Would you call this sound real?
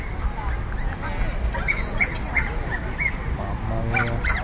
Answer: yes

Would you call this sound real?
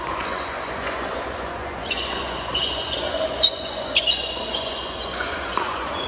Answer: no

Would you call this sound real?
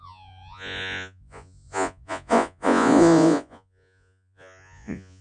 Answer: no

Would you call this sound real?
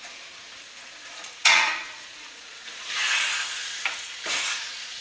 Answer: no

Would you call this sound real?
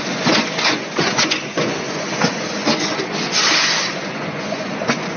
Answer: no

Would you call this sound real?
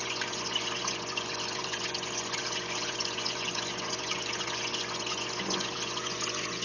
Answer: no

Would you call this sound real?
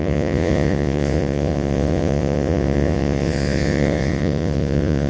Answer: no